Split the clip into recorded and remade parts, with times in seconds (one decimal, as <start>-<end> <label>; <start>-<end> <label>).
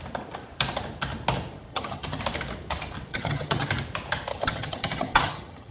0.0-1.7 recorded; 1.7-2.2 remade; 2.2-3.1 recorded; 3.1-3.7 remade; 3.7-4.3 recorded; 4.3-5.7 remade